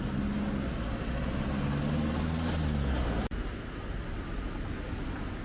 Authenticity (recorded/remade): recorded